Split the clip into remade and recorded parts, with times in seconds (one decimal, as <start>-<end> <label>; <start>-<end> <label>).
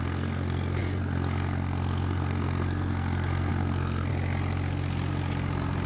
0.0-4.1 remade; 4.1-5.9 recorded